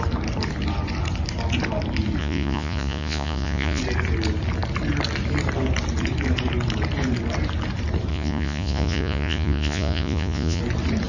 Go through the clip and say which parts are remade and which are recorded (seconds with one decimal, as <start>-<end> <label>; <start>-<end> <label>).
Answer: 0.0-2.2 recorded; 2.2-3.8 remade; 3.8-8.1 recorded; 8.1-10.6 remade; 10.6-11.1 recorded